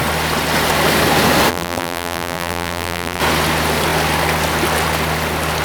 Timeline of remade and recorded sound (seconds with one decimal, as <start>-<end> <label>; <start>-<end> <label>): 0.0-1.5 recorded; 1.5-3.2 remade; 3.2-5.6 recorded